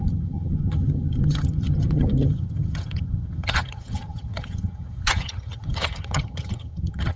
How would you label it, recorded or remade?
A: remade